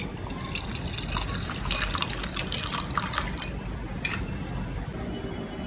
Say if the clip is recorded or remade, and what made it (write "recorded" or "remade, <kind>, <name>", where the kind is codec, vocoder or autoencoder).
recorded